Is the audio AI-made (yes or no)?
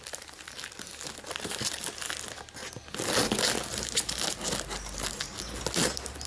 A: no